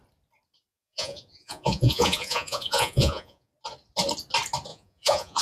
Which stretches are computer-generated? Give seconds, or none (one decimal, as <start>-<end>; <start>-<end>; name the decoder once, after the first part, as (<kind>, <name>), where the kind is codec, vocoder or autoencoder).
0.7-3.5 (vocoder, Vocos); 4.7-5.4